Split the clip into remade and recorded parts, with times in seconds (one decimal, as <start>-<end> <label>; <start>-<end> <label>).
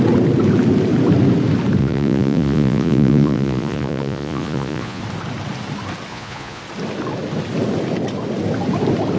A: 0.0-1.8 recorded; 1.8-5.0 remade; 5.0-6.1 recorded; 6.1-6.6 remade; 6.6-9.2 recorded